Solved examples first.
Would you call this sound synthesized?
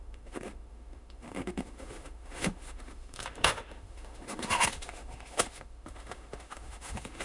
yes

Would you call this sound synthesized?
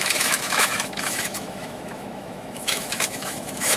yes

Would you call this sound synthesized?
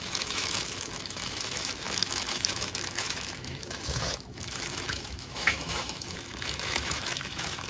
yes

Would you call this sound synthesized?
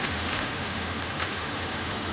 yes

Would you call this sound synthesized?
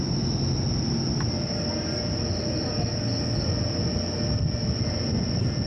no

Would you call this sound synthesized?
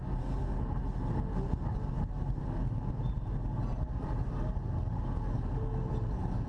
no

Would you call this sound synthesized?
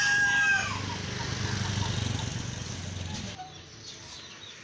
no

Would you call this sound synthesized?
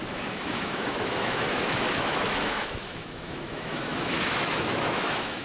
yes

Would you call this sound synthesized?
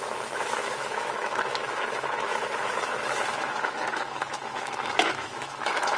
yes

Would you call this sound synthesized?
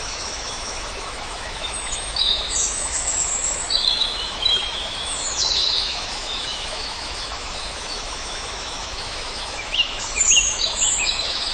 yes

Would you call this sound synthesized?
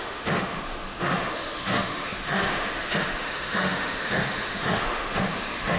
yes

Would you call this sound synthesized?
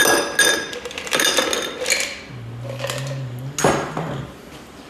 no